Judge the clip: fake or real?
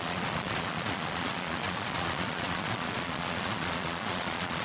fake